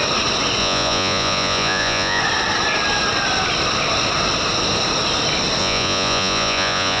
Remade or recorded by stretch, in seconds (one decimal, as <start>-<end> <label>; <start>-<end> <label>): 0.0-0.6 recorded; 0.6-2.2 remade; 2.2-5.6 recorded; 5.6-7.0 remade